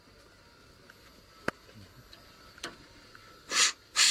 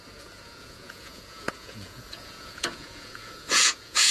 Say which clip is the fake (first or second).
second